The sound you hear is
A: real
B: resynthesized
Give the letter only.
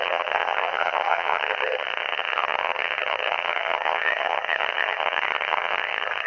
B